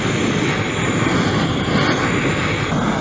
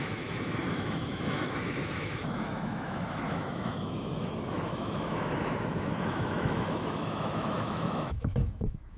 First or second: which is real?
first